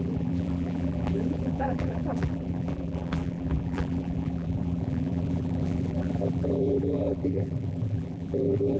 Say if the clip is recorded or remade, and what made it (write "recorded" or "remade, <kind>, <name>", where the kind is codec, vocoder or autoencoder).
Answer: remade, vocoder, BigVGAN v2